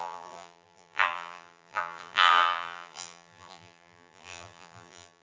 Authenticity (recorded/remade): remade